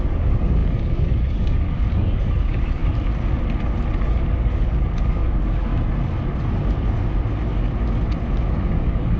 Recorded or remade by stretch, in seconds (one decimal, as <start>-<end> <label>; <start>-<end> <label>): 0.0-2.8 remade; 2.8-4.0 recorded; 4.0-5.7 remade; 5.7-8.5 recorded; 8.5-9.2 remade

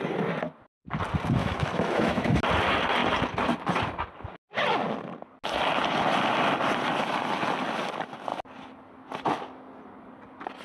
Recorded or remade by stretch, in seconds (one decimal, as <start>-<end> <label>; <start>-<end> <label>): 0.0-1.4 recorded; 1.4-2.4 remade; 2.4-10.6 recorded

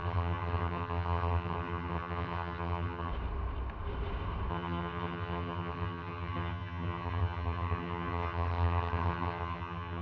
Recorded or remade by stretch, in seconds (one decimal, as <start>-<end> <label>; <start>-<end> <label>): 0.0-3.1 remade; 3.1-4.5 recorded; 4.5-10.0 remade

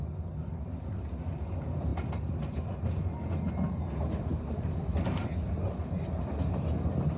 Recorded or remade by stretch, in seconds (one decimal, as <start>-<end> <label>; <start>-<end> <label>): 0.0-7.2 recorded

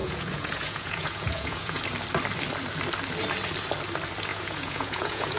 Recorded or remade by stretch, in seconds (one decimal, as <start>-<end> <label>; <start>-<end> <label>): 0.0-1.8 remade; 1.8-4.3 recorded; 4.3-5.4 remade

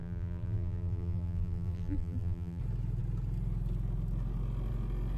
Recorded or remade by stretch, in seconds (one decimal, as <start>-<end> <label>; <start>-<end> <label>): 0.0-2.6 remade; 2.6-5.2 recorded